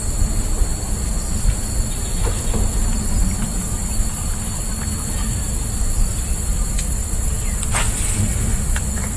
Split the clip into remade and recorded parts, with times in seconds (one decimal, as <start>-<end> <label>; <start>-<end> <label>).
0.0-6.1 recorded; 6.1-6.6 remade; 6.6-9.2 recorded